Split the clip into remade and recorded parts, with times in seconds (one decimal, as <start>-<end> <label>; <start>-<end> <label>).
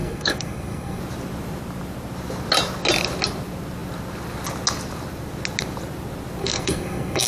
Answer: 0.0-1.0 remade; 1.0-6.4 recorded; 6.4-7.3 remade